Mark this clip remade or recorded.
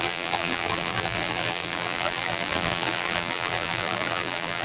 remade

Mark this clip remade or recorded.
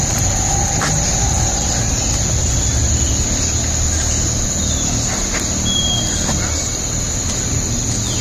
recorded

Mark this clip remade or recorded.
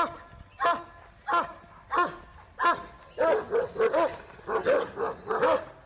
recorded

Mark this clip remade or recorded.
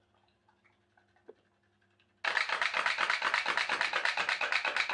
recorded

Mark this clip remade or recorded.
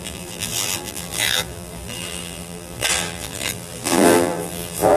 remade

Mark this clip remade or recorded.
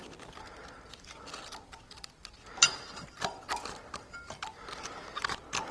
remade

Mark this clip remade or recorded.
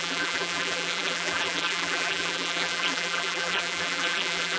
remade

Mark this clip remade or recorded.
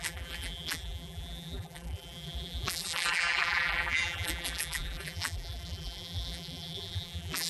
remade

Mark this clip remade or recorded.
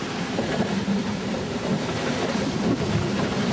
remade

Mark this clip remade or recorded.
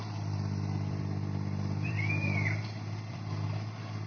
remade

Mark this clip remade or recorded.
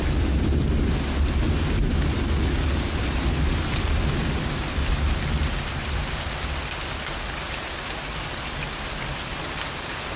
recorded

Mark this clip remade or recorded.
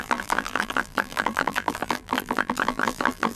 remade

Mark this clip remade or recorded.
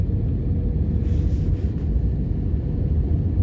recorded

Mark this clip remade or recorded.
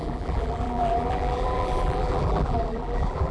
remade